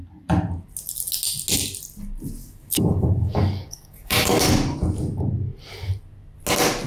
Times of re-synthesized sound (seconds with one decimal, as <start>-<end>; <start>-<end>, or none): 2.4-4.5